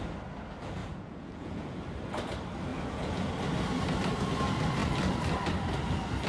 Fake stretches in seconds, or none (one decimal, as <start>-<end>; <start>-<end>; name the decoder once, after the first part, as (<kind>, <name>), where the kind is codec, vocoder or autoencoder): 0.8-1.8 (vocoder, Vocos); 2.7-3.3